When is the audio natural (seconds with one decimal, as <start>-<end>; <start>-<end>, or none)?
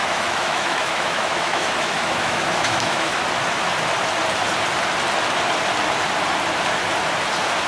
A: 3.2-7.7